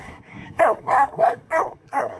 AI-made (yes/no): yes